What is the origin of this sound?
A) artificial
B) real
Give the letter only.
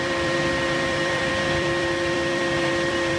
A